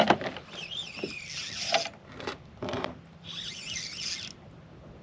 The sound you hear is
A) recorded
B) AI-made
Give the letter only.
A